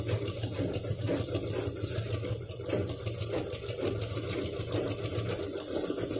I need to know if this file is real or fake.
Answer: real